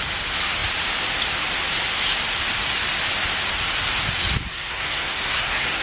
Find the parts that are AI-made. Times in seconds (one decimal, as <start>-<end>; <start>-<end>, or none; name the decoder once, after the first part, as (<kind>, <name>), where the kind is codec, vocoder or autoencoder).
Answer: 4.5-5.8 (codec, SNAC)